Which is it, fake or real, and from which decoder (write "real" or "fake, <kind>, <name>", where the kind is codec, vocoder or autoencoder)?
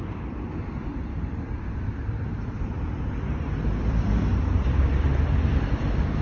fake, vocoder, BigVGAN v2